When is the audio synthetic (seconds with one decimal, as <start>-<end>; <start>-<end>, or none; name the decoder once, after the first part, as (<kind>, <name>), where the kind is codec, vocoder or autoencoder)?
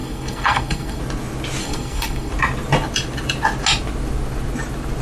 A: 0.0-1.0 (codec, SNAC); 1.6-2.3